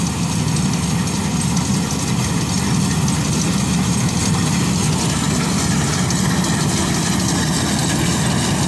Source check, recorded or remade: recorded